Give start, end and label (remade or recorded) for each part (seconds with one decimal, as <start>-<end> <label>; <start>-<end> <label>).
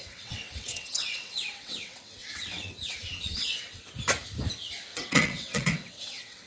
0.0-3.9 remade; 3.9-4.9 recorded; 4.9-6.5 remade